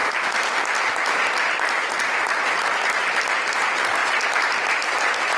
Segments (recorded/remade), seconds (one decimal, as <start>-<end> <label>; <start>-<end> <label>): 0.0-5.4 recorded